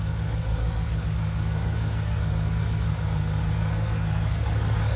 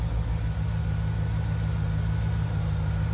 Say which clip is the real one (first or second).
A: second